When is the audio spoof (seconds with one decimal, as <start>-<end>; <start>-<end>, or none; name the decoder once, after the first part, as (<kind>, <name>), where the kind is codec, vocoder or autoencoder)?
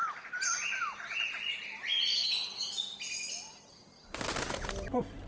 none